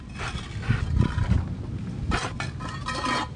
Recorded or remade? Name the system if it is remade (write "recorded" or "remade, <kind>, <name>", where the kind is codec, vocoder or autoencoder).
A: recorded